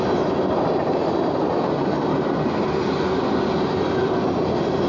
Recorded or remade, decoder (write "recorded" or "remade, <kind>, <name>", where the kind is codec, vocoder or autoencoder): recorded